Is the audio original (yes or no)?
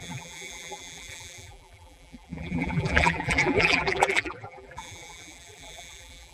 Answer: no